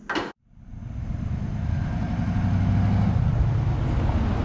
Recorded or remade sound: recorded